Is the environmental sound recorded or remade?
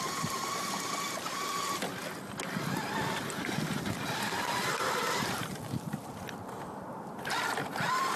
recorded